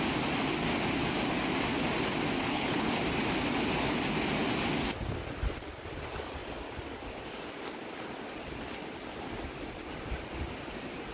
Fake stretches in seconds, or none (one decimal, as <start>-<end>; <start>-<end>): 2.5-3.0